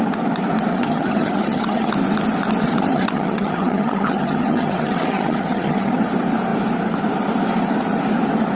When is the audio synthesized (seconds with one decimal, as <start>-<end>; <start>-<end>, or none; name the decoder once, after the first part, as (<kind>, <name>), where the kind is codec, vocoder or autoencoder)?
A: 0.7-1.9 (vocoder, HiFi-GAN); 2.7-6.0